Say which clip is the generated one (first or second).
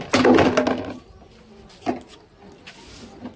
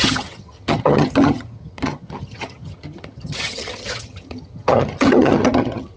second